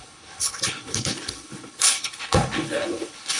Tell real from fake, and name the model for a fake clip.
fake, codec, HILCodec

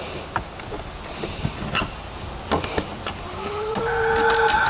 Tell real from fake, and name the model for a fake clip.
real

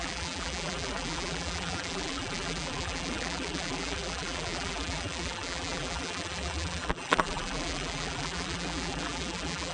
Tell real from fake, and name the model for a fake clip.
fake, vocoder, BigVGAN v2